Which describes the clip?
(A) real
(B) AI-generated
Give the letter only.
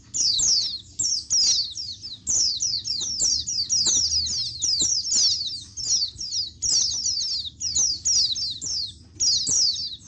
A